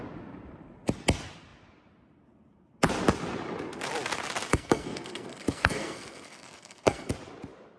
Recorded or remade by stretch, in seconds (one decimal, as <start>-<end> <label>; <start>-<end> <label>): 0.0-4.5 recorded; 4.5-7.1 remade; 7.1-7.8 recorded